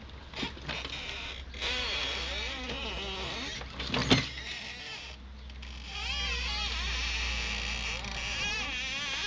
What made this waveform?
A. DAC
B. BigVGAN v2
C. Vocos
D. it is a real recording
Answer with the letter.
D